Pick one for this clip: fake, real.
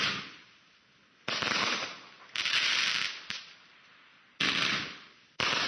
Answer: real